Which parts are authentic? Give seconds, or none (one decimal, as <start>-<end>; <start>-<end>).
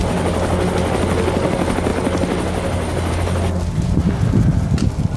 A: 0.0-5.2